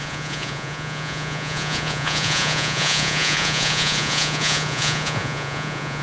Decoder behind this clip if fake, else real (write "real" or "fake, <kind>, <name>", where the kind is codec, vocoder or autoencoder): fake, vocoder, Vocos